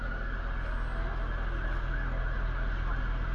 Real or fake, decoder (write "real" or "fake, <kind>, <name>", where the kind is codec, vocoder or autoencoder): real